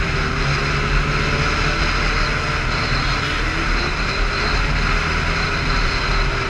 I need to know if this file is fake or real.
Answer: real